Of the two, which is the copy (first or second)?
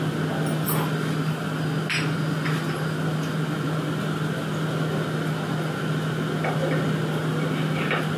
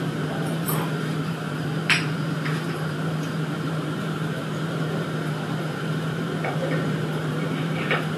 second